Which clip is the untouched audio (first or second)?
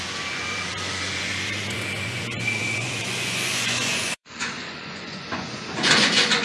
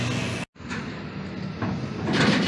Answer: second